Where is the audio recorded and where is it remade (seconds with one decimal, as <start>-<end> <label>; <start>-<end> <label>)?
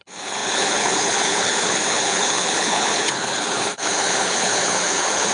0.0-5.3 remade